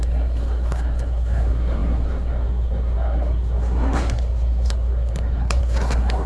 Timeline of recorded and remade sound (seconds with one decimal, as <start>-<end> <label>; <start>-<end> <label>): 0.0-6.3 remade